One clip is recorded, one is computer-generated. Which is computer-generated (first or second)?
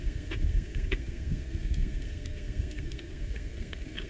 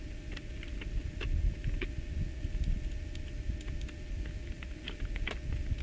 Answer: first